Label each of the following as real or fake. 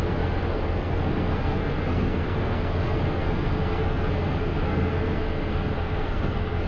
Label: fake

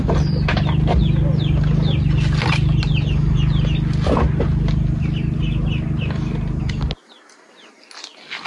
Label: real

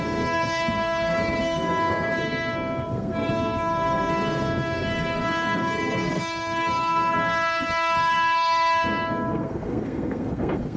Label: fake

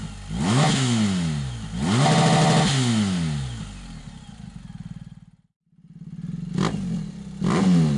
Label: real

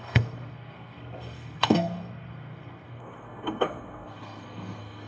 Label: fake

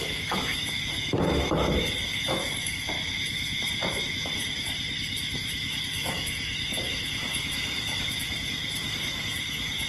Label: fake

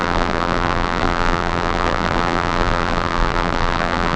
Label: fake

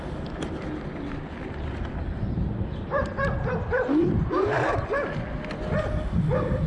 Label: real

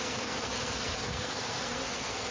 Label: fake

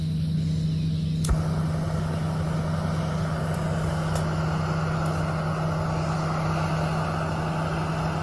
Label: real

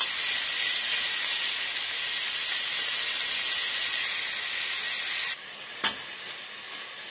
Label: real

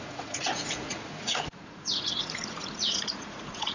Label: fake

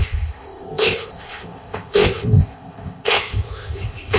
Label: fake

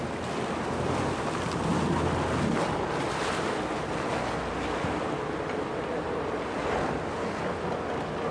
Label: real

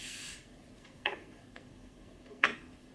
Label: fake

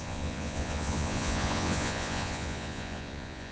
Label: fake